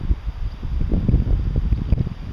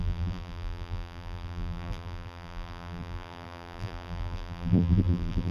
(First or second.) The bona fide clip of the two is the first